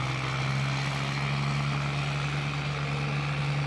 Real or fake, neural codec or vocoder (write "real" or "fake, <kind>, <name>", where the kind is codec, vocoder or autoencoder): real